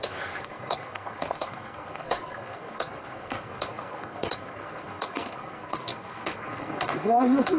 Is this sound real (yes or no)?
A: no